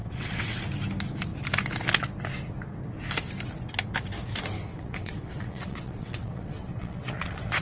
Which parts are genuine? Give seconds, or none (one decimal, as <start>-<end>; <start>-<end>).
0.6-4.7